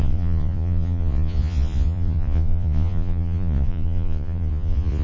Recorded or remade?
remade